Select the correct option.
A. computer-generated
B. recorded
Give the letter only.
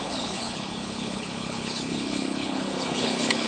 A